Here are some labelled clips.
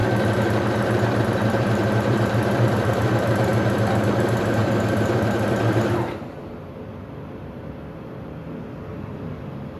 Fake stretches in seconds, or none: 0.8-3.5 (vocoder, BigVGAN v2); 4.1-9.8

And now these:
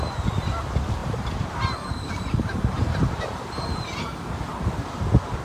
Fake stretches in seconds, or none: 1.0-4.0 (vocoder, BigVGAN v2)

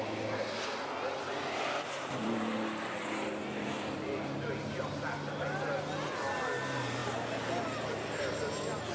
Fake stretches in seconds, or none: none